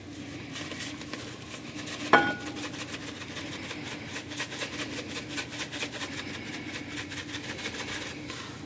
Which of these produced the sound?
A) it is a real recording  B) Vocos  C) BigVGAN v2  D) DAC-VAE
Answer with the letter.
A